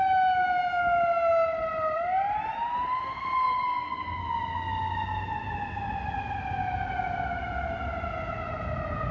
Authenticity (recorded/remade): recorded